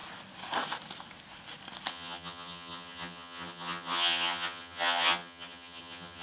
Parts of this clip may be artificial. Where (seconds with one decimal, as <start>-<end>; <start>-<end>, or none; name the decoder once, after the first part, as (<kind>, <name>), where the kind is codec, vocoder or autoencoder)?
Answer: 1.9-6.2 (vocoder, HiFi-GAN)